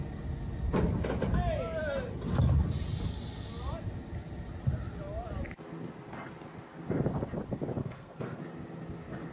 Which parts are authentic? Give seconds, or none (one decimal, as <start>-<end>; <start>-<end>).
0.0-7.8; 8.4-9.3